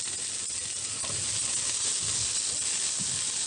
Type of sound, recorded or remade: recorded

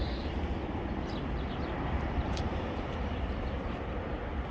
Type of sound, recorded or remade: remade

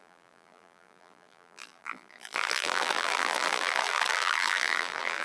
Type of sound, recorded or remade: remade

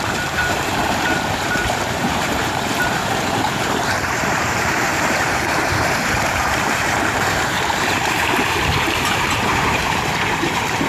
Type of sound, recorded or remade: remade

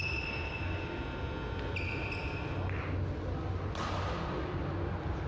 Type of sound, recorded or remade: recorded